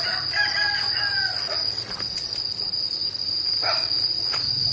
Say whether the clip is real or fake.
real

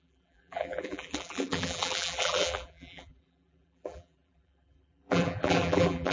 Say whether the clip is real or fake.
fake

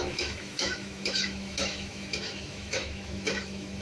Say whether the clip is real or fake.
fake